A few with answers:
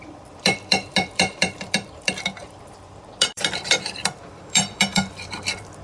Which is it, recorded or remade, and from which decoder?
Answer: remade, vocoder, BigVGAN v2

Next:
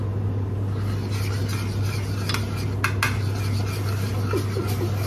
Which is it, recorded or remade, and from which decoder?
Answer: recorded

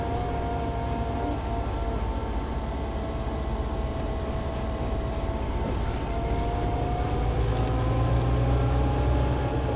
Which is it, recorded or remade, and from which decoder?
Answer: recorded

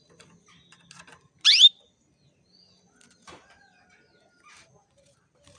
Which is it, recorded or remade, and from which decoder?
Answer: recorded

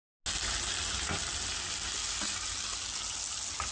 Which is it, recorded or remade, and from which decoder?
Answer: recorded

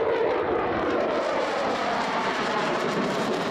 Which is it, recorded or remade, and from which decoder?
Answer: remade, vocoder, BigVGAN v2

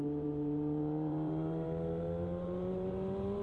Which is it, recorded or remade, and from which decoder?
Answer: remade, vocoder, BigVGAN v2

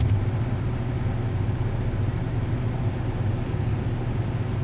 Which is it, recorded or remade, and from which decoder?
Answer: recorded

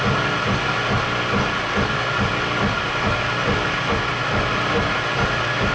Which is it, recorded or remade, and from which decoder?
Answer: recorded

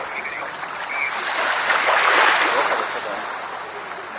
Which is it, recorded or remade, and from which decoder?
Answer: recorded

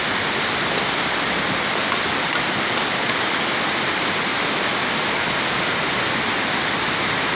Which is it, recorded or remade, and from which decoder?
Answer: remade, vocoder, BigVGAN v2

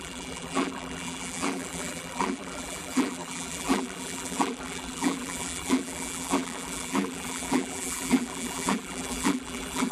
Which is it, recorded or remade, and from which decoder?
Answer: remade, vocoder, BigVGAN v2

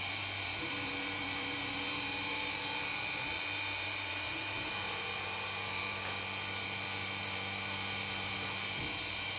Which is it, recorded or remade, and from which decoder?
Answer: remade, vocoder, BigVGAN v2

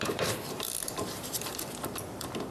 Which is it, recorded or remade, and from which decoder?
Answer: remade, vocoder, BigVGAN v2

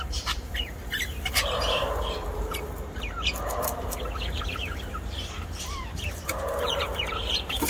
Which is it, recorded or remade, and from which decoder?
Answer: remade, vocoder, BigVGAN v2